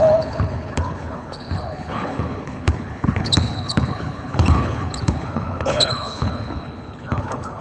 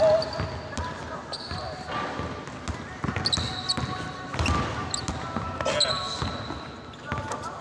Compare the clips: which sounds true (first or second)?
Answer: second